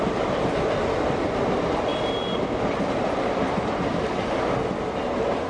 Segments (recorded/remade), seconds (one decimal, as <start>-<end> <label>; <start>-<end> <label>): 0.0-5.5 recorded